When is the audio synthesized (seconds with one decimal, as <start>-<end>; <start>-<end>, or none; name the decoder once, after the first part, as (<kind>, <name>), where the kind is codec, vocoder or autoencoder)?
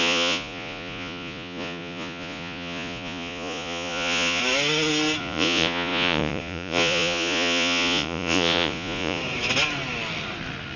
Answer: 0.0-4.4 (vocoder, Vocos); 5.2-9.2